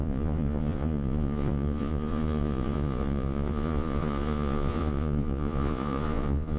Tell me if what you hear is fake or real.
fake